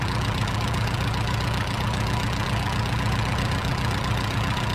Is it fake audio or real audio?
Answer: fake